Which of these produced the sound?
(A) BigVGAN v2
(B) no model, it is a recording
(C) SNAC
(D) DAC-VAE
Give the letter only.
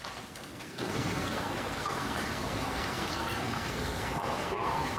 C